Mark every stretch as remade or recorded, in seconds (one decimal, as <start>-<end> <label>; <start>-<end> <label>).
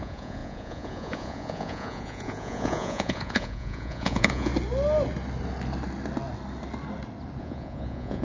0.0-4.5 remade; 4.5-7.4 recorded; 7.4-8.2 remade